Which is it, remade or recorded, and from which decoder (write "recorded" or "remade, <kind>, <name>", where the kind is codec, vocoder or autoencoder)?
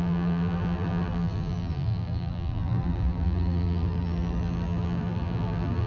remade, vocoder, BigVGAN v2